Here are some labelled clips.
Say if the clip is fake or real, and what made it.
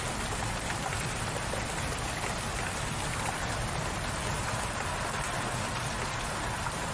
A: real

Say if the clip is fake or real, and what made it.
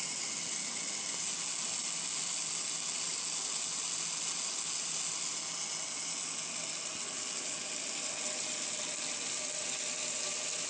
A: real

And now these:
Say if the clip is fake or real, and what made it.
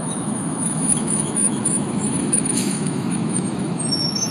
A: fake, autoencoder, DAC-VAE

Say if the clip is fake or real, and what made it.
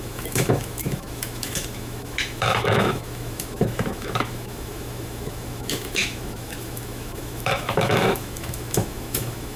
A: fake, autoencoder, DAC-VAE